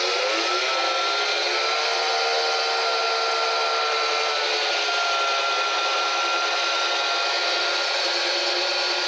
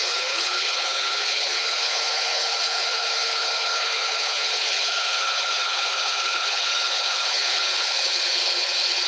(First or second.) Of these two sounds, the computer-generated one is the second